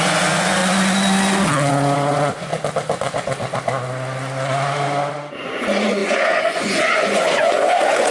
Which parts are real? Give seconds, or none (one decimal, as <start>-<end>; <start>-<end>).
0.6-1.7; 2.5-5.1